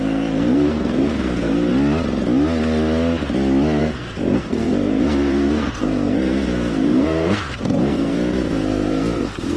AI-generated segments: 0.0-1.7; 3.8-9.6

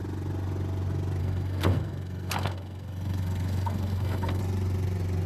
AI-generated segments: 1.2-4.4

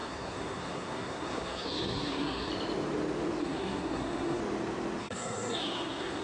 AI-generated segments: 0.0-2.5; 3.4-4.4; 5.0-6.2

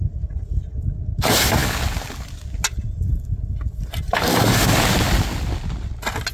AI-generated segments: none

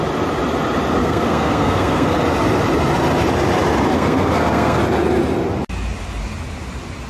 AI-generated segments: 1.0-2.2; 3.9-4.8